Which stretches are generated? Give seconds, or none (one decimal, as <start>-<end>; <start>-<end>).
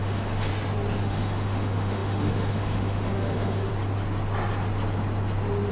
0.0-0.5; 1.0-3.7